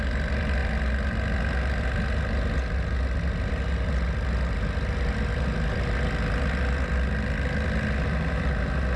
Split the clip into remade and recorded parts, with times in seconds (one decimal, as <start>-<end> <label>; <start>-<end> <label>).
0.0-9.0 recorded